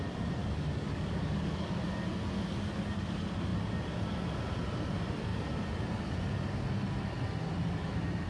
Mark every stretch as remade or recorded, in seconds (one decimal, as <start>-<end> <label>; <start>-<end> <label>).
0.0-0.4 recorded; 0.4-1.8 remade; 1.8-8.3 recorded